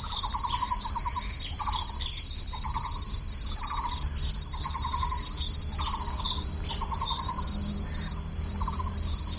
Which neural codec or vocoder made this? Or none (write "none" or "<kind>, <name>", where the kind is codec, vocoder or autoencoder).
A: none